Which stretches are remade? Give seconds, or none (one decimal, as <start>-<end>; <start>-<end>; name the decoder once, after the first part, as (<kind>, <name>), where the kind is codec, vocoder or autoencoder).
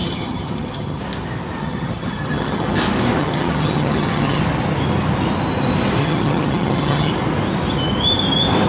0.0-1.0 (vocoder, HiFi-GAN); 1.6-2.8; 3.2-4.4; 6.0-7.1